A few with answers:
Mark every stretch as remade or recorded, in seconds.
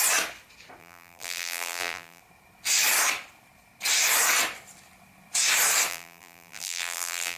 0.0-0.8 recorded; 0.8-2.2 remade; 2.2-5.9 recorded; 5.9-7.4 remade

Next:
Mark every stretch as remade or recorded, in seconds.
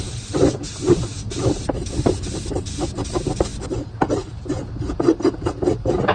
0.0-3.5 remade; 3.5-4.7 recorded; 4.7-6.1 remade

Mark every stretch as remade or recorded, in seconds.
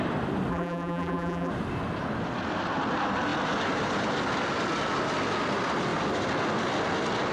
0.0-0.5 recorded; 0.5-1.5 remade; 1.5-7.3 recorded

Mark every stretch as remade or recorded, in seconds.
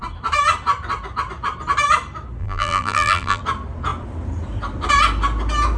0.0-2.4 recorded; 2.4-3.4 remade; 3.4-5.8 recorded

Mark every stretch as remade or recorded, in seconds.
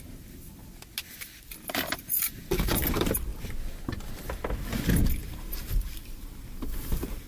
0.0-0.6 remade; 0.6-1.4 recorded; 1.4-3.3 remade; 3.3-5.2 recorded; 5.2-7.3 remade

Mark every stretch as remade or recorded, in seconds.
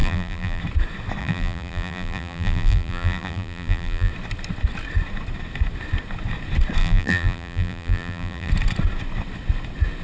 0.0-0.6 remade; 0.6-1.2 recorded; 1.2-4.1 remade; 4.1-6.8 recorded; 6.8-8.5 remade; 8.5-10.0 recorded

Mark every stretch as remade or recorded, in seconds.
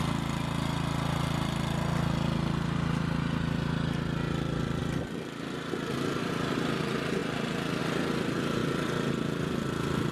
0.0-4.8 recorded; 4.8-6.3 remade; 6.3-8.6 recorded; 8.6-9.5 remade; 9.5-10.1 recorded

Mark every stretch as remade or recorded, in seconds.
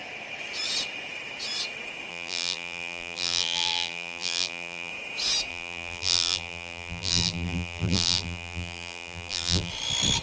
0.0-2.1 recorded; 2.1-4.9 remade; 4.9-5.5 recorded; 5.5-9.7 remade; 9.7-10.2 recorded